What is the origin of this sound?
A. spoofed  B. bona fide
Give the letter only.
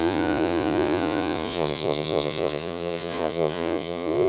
A